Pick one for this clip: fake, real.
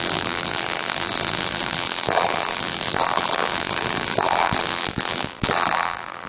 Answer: fake